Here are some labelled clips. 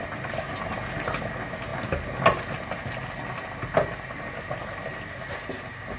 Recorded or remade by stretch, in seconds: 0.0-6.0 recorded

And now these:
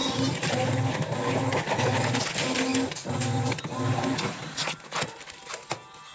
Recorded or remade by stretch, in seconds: 0.0-6.1 recorded

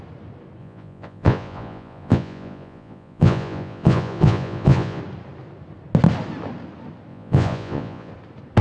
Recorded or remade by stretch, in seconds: 0.0-0.6 recorded; 0.6-5.0 remade; 5.0-7.1 recorded; 7.1-8.1 remade; 8.1-8.6 recorded

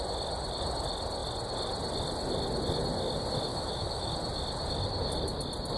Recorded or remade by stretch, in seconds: 0.0-3.5 recorded; 3.5-4.1 remade; 4.1-5.8 recorded

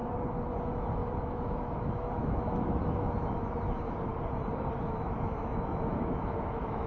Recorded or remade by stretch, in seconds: 0.0-0.6 recorded; 0.6-4.1 remade; 4.1-4.8 recorded; 4.8-6.9 remade

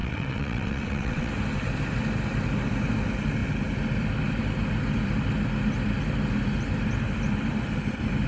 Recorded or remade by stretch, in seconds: 0.0-1.3 remade; 1.3-8.3 recorded

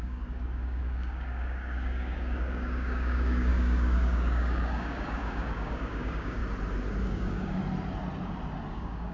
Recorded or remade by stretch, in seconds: 0.0-6.4 remade; 6.4-7.0 recorded; 7.0-7.6 remade; 7.6-8.7 recorded; 8.7-9.1 remade